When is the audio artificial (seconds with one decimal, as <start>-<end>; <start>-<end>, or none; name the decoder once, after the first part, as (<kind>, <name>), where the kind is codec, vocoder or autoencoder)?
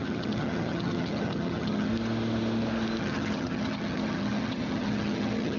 0.0-1.9 (vocoder, HiFi-GAN); 3.0-5.6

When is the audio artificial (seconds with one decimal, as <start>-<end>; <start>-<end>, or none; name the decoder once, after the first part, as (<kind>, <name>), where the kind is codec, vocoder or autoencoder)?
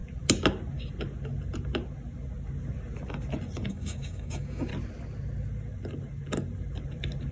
3.7-4.7 (codec, DAC)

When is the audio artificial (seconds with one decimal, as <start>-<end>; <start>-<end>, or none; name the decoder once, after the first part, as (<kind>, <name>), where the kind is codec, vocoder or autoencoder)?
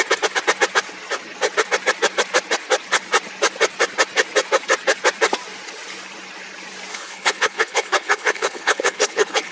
6.9-9.5 (codec, HILCodec)